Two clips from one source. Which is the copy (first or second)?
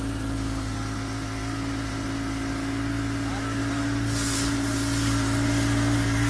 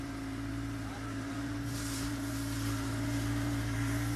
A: second